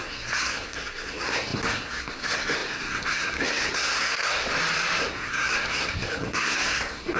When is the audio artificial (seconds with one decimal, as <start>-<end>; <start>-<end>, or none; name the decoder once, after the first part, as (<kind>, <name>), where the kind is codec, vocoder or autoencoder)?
0.0-4.4 (codec, SNAC); 5.0-7.2